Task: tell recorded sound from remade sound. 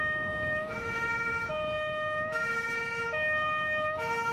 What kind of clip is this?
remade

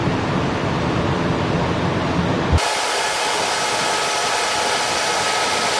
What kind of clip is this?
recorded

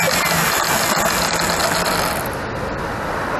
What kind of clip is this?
recorded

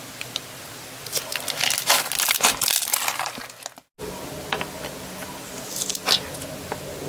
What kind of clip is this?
recorded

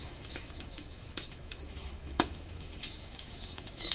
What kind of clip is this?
remade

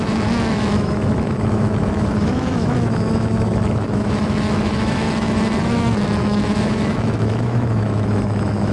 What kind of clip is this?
remade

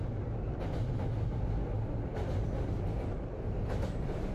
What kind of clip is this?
recorded